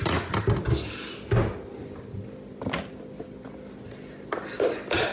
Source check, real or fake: real